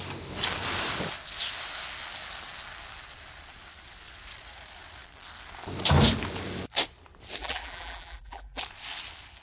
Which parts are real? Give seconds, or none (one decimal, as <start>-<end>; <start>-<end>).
0.0-7.4; 8.6-9.4